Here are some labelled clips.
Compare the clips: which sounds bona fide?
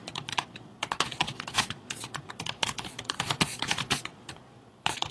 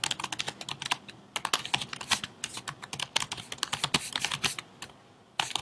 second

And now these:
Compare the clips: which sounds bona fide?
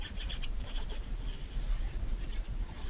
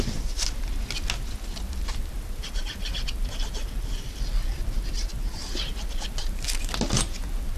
second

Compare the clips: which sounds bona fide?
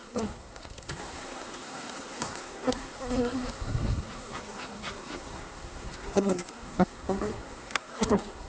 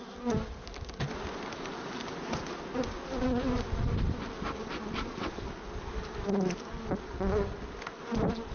second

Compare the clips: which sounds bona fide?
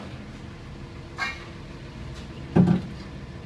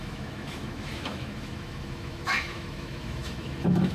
first